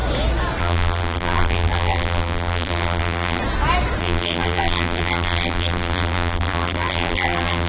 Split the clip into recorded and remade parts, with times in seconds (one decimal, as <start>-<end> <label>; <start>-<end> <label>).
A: 0.0-0.6 recorded; 0.6-3.4 remade; 3.4-4.0 recorded; 4.0-7.7 remade